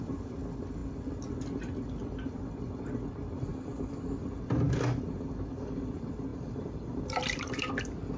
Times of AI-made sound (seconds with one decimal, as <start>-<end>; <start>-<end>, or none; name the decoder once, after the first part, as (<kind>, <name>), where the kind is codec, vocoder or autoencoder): 6.3-7.7 (vocoder, BigVGAN v2)